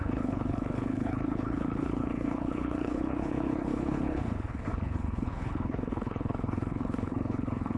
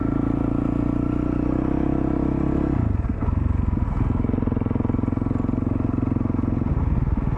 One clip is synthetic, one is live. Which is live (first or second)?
second